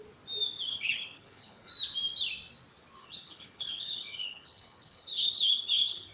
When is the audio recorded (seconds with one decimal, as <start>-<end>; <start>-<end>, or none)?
0.0-0.7; 1.7-3.0